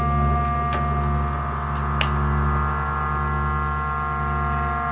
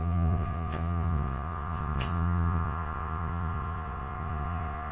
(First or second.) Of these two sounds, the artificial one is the second